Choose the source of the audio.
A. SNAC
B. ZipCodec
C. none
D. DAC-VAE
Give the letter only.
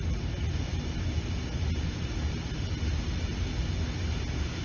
C